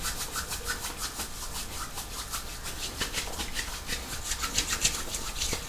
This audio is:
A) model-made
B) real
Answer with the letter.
B